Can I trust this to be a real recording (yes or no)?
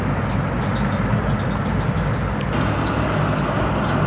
yes